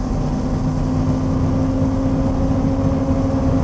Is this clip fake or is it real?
real